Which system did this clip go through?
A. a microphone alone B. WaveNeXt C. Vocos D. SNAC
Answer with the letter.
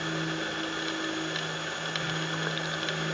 A